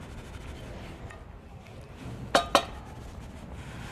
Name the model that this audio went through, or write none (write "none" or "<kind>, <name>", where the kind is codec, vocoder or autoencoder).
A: none